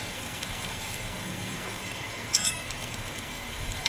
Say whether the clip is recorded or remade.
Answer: remade